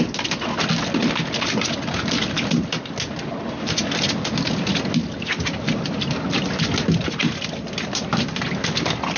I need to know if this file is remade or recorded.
recorded